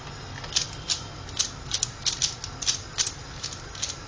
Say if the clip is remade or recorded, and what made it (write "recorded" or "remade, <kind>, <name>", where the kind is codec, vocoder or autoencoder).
recorded